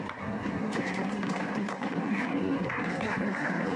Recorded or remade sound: remade